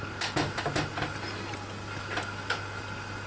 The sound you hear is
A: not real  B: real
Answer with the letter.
B